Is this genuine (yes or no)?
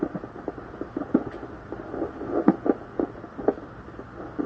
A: yes